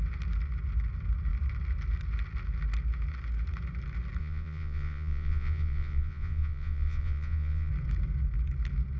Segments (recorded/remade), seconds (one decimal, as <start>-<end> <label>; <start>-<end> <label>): 0.0-4.2 recorded; 4.2-7.7 remade; 7.7-9.0 recorded